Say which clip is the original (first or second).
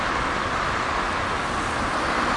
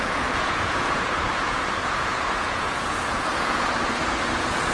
first